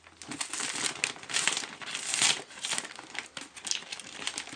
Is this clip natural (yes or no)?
yes